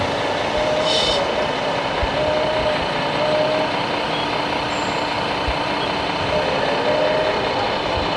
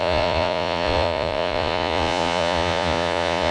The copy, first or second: second